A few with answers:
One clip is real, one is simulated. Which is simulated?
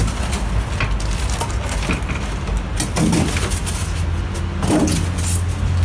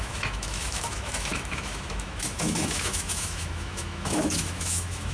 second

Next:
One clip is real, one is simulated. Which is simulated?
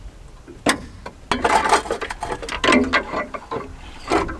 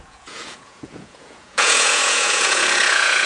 second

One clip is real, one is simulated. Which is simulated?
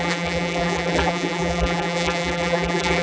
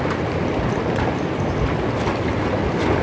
first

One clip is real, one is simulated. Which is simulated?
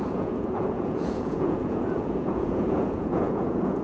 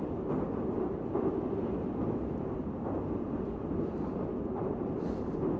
first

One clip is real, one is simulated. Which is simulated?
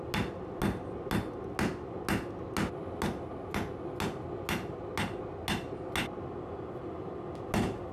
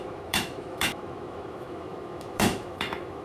second